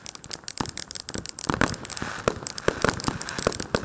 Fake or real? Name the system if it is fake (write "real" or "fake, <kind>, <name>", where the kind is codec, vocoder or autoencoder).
real